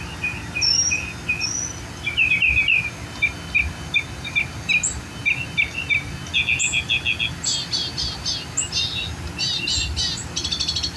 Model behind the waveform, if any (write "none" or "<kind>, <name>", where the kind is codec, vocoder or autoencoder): none